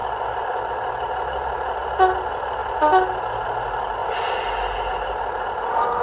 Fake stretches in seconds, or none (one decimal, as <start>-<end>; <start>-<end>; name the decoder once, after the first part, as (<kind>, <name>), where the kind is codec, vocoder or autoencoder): none